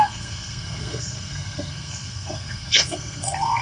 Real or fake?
fake